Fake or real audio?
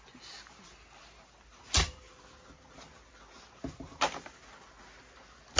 real